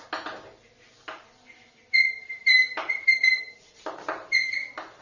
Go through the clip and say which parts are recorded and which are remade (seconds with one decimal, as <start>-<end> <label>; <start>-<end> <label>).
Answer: 0.0-2.2 recorded; 2.2-4.5 remade; 4.5-5.0 recorded